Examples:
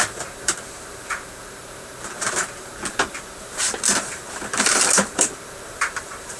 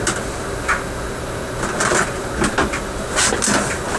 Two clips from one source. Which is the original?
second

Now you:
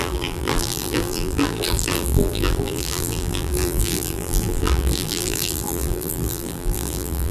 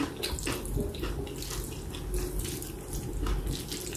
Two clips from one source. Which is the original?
second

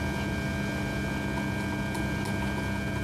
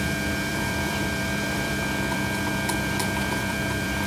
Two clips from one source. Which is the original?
first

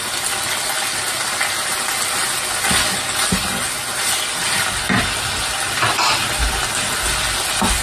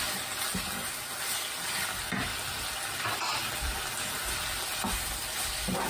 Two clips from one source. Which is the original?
first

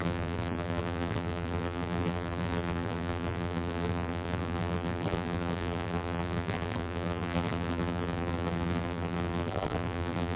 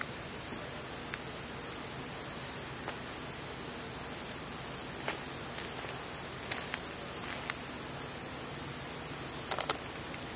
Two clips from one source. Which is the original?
second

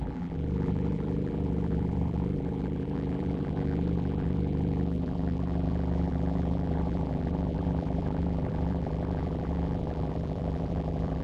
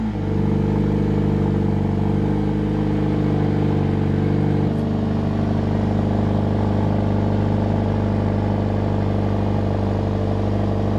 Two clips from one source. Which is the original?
second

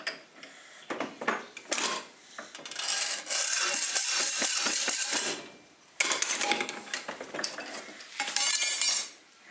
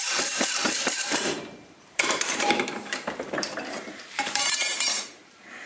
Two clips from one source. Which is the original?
first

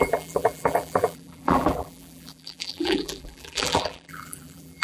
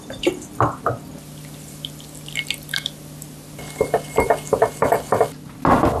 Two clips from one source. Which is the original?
second